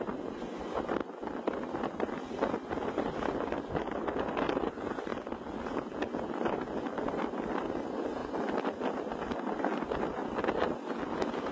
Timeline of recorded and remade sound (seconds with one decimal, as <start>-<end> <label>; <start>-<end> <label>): 0.0-1.0 recorded; 1.0-1.5 remade; 1.5-11.5 recorded